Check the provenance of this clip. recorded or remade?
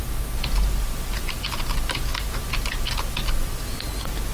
recorded